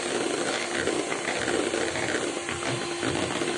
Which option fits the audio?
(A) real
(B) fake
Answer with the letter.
A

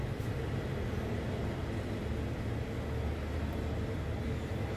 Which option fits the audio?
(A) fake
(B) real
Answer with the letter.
B